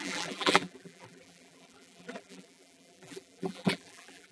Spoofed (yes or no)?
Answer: yes